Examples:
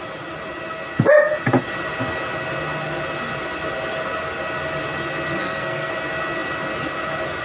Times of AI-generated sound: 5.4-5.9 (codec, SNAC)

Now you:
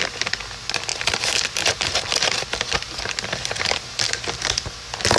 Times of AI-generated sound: 0.9-4.0 (vocoder, BigVGAN v2)

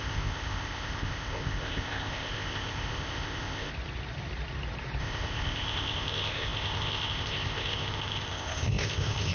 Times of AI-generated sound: 0.0-3.7 (codec, ZipCodec); 5.0-9.3

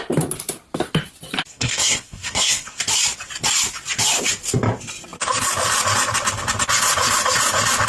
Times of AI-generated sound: 1.5-2.8 (codec, SNAC)